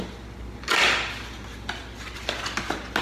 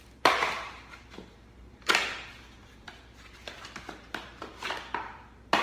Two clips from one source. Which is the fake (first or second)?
second